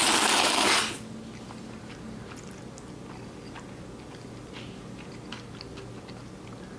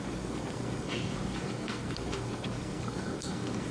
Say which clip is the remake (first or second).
second